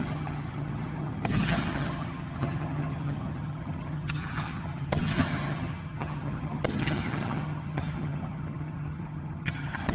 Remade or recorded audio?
remade